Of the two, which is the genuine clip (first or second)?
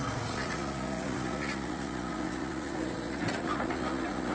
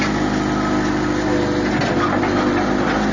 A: second